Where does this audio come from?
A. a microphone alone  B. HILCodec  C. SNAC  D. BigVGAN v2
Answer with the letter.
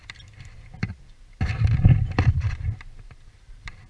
D